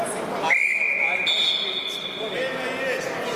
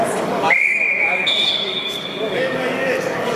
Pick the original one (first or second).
first